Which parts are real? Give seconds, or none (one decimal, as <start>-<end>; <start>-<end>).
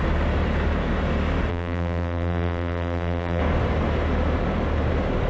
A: 0.0-1.5; 3.4-5.3